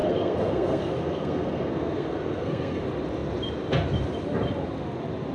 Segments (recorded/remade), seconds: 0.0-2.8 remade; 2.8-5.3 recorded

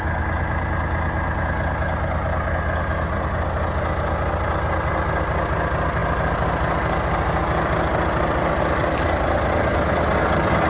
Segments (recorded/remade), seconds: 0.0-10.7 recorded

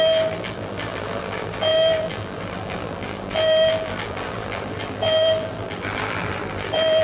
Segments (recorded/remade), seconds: 0.0-7.0 remade